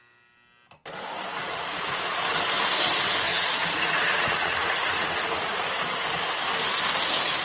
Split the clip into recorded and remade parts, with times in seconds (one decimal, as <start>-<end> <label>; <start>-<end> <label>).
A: 0.0-1.3 recorded; 1.3-2.1 remade; 2.1-3.3 recorded; 3.3-5.7 remade; 5.7-7.4 recorded